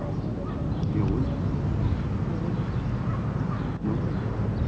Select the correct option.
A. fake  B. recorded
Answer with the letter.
B